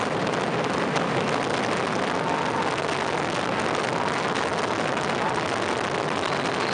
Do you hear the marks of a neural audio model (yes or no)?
no